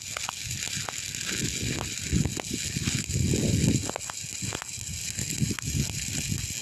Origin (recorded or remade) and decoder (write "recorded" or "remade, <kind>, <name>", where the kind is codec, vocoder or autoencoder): recorded